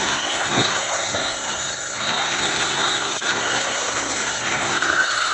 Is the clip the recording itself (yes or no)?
no